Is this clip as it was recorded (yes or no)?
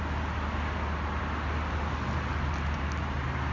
yes